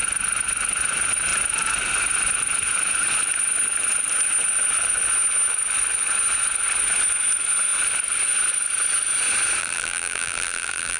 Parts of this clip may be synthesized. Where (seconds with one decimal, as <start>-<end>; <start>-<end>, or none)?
9.6-11.0